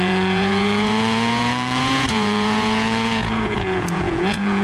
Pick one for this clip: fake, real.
fake